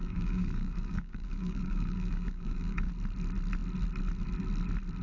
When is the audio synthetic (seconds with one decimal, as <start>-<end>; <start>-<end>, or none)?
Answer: 0.0-2.9